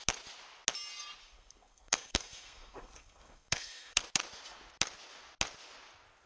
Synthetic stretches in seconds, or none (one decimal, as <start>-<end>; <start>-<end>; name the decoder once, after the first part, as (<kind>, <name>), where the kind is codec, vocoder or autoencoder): 1.2-4.0 (codec, SNAC)